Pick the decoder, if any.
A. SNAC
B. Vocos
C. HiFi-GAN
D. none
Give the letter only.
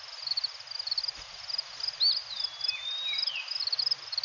D